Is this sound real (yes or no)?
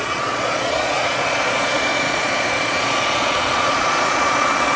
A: no